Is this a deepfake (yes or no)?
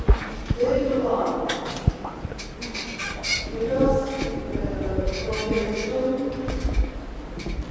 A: no